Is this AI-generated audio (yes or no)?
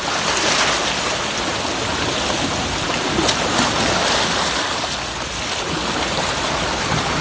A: no